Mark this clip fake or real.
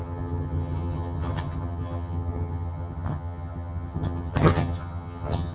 fake